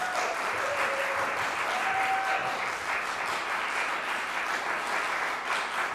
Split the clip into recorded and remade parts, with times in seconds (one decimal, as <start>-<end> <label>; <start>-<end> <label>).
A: 0.0-5.9 recorded